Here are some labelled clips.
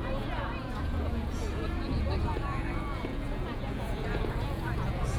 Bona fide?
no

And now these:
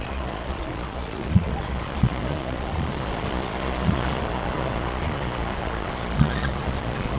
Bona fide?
no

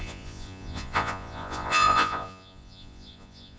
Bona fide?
no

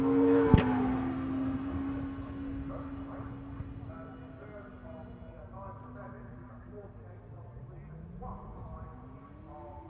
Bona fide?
yes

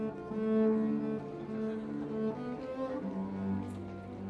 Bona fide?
yes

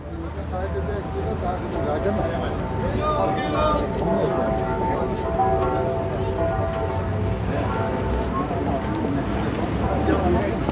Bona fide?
yes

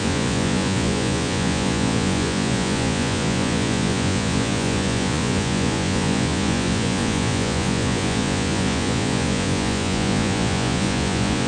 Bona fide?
no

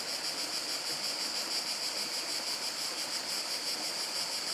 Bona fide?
yes